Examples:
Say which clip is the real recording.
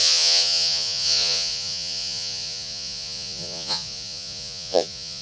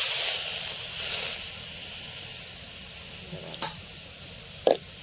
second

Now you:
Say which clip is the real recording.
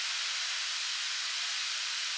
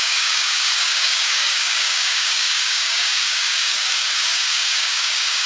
first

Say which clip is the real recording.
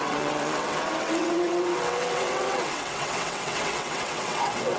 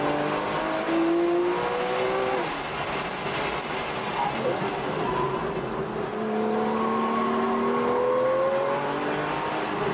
second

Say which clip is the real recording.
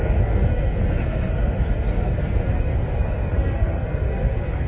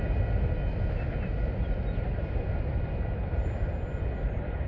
second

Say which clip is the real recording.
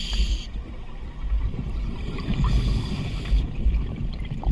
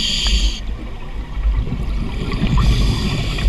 second